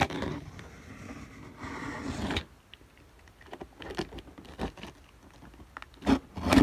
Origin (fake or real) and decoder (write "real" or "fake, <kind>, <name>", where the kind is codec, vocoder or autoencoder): real